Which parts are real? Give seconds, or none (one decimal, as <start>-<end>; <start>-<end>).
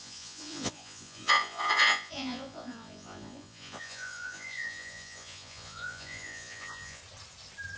7.0-7.8